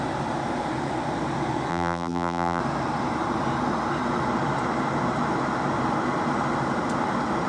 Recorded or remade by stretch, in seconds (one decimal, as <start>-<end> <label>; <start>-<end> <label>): 0.0-1.7 recorded; 1.7-2.6 remade; 2.6-7.5 recorded